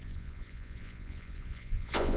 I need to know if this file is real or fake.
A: fake